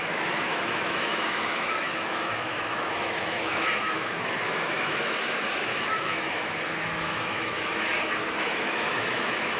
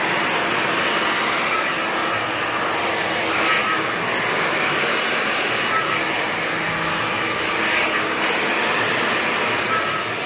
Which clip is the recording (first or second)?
second